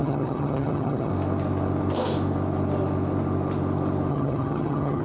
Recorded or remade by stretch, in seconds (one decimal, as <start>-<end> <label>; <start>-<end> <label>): 0.0-1.1 remade; 1.1-4.1 recorded; 4.1-5.0 remade